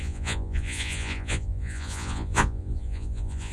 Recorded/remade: remade